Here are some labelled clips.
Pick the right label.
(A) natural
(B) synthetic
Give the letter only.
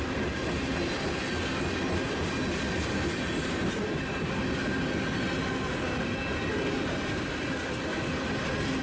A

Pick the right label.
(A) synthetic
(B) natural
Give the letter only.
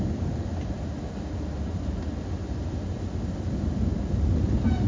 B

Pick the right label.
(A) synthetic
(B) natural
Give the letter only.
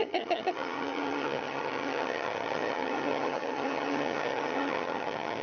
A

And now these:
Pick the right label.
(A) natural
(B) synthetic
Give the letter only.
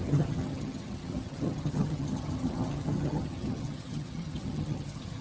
B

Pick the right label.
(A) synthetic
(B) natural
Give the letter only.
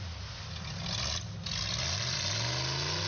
B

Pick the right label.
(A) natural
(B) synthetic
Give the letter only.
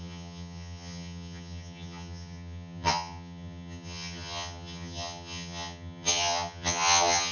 B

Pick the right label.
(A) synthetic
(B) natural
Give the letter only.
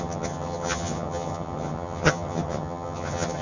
A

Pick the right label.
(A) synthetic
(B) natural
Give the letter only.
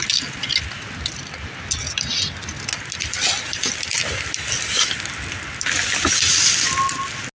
B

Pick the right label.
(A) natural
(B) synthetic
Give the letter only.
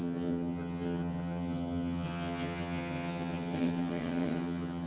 B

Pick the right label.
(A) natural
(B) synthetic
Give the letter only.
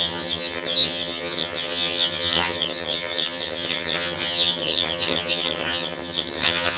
B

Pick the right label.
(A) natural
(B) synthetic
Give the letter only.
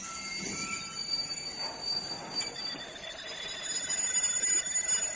A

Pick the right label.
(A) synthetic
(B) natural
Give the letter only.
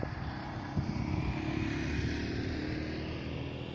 B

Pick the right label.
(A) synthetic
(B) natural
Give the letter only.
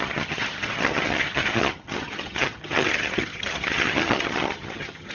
A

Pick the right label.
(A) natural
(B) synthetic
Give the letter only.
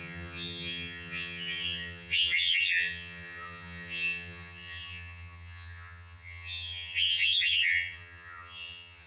B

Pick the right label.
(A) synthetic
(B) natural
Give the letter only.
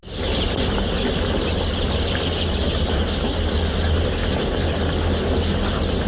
B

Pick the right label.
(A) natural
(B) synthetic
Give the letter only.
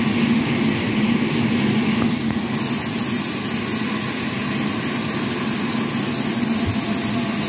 A